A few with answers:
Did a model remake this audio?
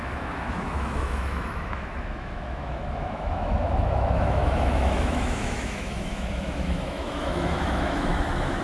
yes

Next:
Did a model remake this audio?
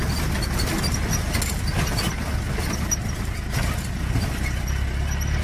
no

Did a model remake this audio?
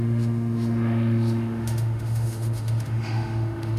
yes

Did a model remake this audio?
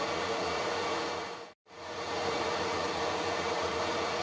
yes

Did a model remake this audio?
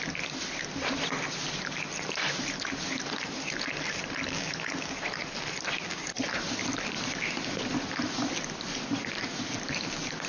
no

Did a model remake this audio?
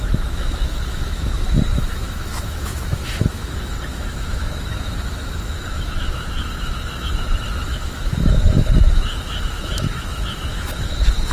yes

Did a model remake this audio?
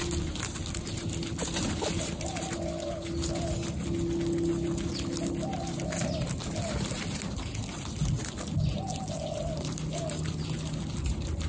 no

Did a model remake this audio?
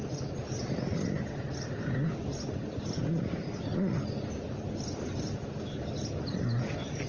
no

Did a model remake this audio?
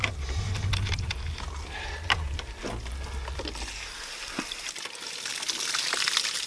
no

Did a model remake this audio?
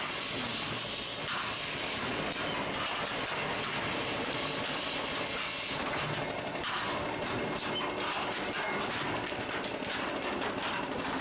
no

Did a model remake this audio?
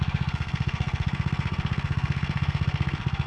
yes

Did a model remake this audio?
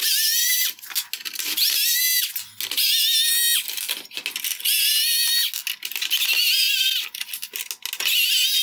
no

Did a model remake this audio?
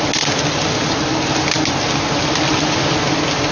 no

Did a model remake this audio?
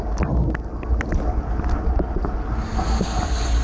no